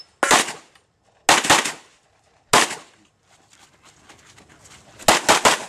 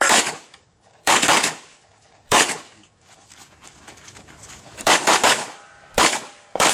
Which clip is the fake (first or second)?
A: second